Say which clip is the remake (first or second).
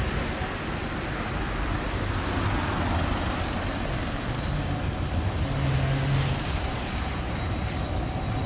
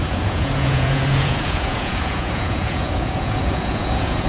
second